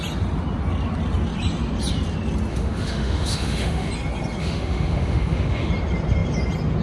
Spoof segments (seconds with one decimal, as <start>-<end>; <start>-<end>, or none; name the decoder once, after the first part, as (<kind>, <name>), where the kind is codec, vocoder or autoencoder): 2.5-3.9 (autoencoder, DAC-VAE); 4.4-5.7